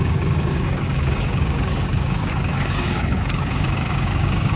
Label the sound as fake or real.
fake